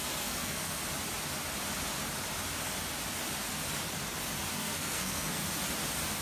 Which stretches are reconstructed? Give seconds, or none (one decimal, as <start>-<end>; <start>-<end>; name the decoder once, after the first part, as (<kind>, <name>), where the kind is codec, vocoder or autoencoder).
0.0-0.8 (codec, SNAC); 4.5-5.4